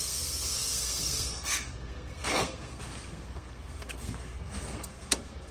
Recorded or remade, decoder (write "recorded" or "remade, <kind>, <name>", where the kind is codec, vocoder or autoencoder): remade, codec, SNAC